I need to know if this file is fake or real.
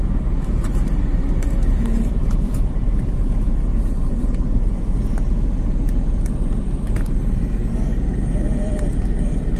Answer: fake